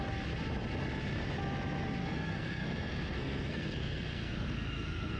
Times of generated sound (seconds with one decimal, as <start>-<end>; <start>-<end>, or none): 2.0-5.2